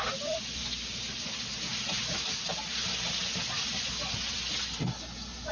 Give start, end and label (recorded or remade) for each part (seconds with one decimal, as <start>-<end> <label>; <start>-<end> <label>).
0.0-5.5 recorded